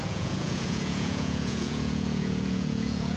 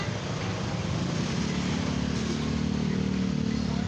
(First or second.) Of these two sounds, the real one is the second